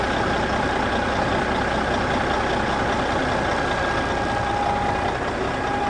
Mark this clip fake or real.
real